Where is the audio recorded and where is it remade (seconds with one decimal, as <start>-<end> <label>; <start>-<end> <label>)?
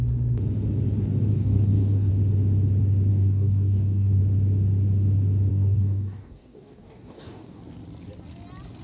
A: 0.0-1.3 recorded; 1.3-2.1 remade; 2.1-3.1 recorded; 3.1-4.2 remade; 4.2-5.5 recorded; 5.5-7.6 remade; 7.6-8.8 recorded